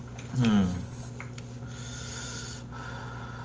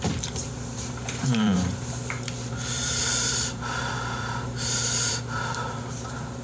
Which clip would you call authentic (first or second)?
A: first